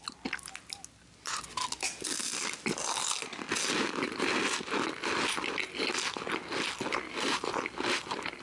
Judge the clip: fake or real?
real